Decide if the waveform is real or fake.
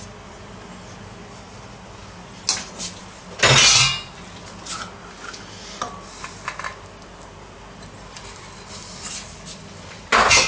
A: real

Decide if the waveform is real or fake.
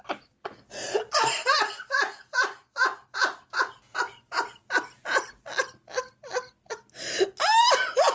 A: real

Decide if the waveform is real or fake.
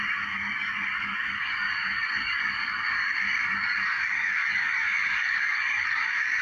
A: fake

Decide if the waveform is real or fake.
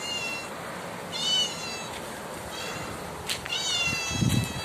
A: real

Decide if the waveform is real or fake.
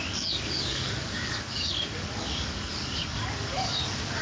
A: fake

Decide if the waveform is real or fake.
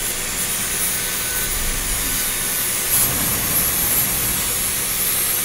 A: real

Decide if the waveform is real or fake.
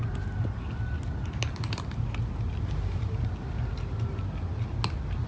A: real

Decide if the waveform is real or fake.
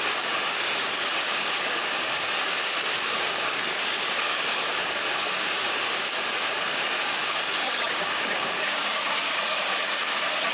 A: fake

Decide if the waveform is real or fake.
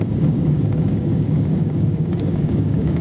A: fake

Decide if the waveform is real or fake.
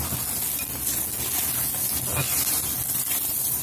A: real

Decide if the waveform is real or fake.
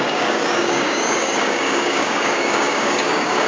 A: fake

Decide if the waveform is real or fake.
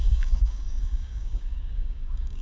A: fake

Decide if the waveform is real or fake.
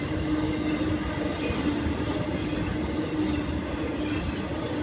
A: real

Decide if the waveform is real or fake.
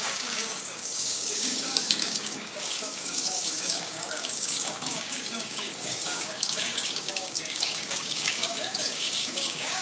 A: fake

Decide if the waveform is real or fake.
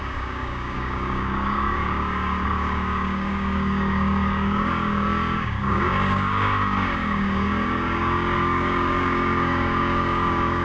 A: fake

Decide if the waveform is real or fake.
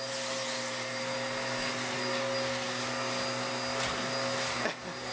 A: real